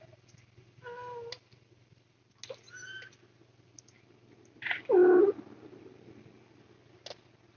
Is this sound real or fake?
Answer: real